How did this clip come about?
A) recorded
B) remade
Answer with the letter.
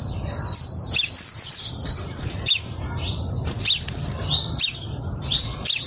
A